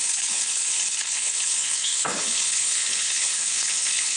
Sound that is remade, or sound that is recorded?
remade